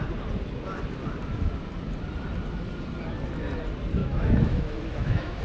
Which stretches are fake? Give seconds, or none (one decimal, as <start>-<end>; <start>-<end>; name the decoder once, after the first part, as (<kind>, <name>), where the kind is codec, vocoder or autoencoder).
4.0-5.4 (autoencoder, DAC-VAE)